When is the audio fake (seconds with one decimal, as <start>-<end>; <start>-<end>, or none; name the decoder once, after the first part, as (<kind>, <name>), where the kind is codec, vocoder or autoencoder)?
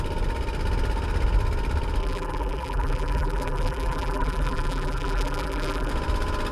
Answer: 2.0-5.9 (vocoder, BigVGAN v2)